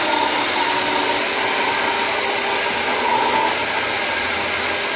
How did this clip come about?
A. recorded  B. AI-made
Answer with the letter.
A